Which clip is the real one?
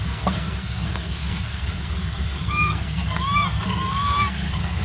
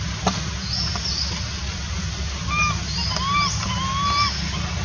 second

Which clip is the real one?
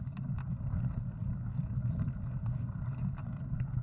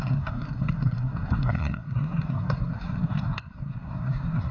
first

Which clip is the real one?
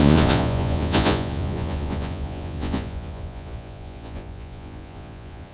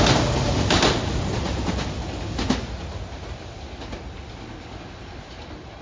second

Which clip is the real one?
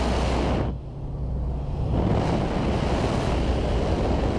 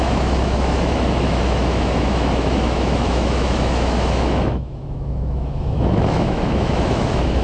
first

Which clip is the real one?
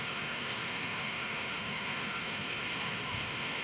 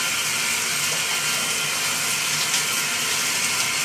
second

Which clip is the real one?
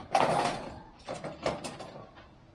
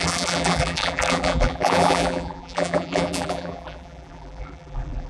first